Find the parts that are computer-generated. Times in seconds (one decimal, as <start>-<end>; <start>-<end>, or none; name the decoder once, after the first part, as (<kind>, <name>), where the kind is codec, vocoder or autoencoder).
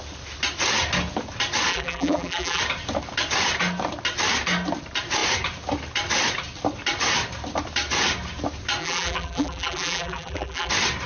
1.7-2.6 (vocoder, BigVGAN v2); 8.8-10.7